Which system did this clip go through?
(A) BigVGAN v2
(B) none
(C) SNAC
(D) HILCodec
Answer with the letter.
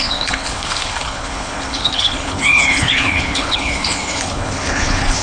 D